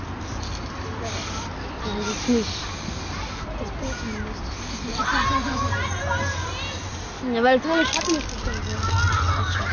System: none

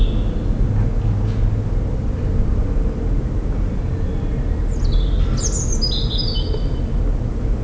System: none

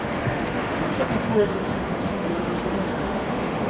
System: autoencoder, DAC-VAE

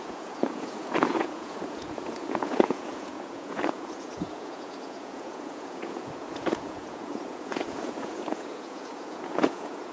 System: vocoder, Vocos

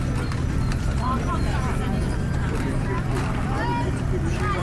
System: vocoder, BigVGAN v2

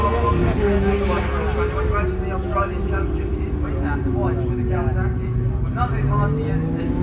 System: none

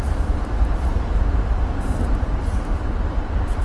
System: vocoder, BigVGAN v2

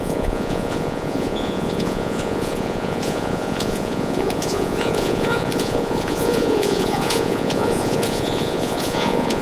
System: vocoder, Vocos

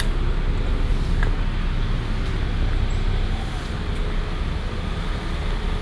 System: none